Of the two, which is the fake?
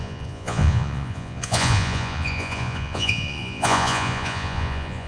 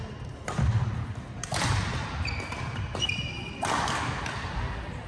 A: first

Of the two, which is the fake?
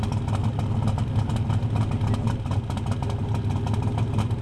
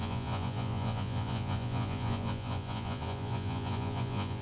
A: second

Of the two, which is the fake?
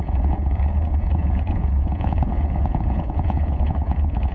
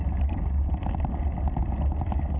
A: first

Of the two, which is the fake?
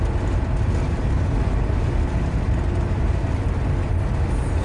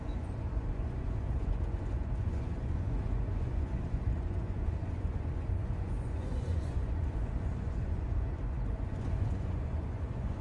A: second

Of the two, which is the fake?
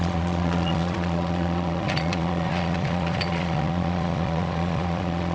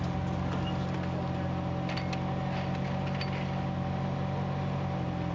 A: first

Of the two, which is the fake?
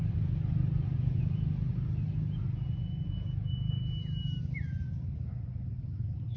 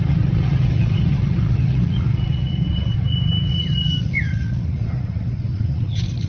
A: second